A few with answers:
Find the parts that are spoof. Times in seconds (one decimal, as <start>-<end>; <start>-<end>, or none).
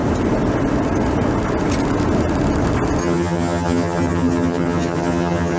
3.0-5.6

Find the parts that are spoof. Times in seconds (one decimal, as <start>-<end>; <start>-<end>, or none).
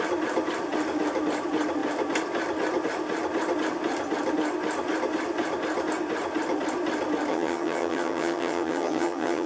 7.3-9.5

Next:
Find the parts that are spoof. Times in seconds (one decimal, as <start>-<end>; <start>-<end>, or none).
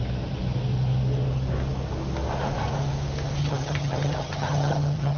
3.4-5.2